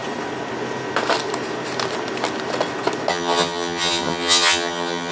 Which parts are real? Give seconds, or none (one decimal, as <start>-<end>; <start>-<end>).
0.0-3.1